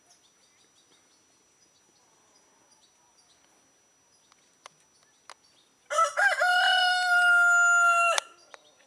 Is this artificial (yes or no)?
no